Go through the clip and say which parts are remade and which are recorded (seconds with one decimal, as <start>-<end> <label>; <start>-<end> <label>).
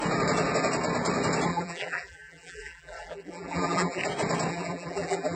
0.0-1.5 recorded; 1.5-4.0 remade; 4.0-4.5 recorded; 4.5-5.4 remade